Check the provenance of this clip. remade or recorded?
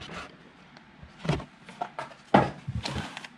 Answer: recorded